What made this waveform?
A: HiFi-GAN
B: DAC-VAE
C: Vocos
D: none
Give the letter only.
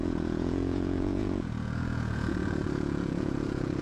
C